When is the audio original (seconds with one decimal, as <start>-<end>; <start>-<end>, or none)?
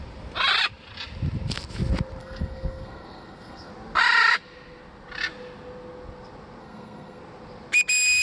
0.0-2.2; 3.7-6.6; 7.2-8.2